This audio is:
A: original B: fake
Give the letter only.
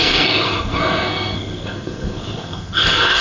B